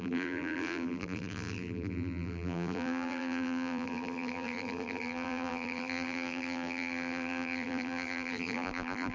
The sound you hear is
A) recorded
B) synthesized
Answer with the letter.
B